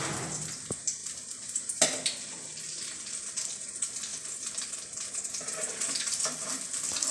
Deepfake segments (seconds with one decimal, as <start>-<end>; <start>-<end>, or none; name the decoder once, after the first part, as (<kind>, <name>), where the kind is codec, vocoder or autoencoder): none